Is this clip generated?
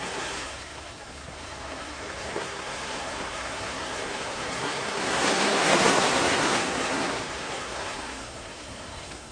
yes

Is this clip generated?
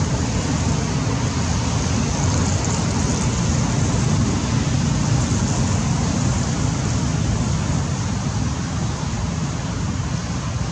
no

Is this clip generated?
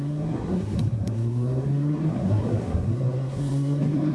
yes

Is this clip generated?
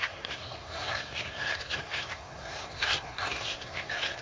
yes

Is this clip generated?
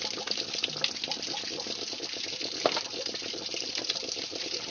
no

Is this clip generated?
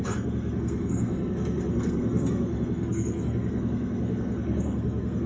yes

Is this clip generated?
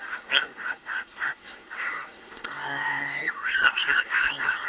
yes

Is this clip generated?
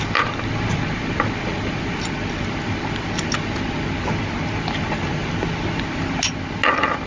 no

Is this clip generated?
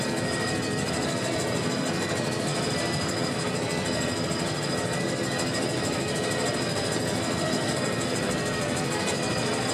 yes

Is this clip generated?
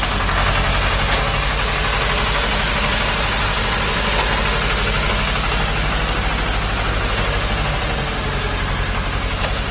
no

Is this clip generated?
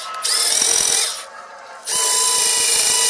no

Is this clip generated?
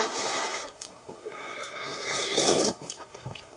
yes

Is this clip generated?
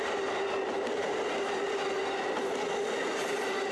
no